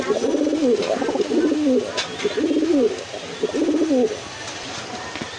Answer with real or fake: real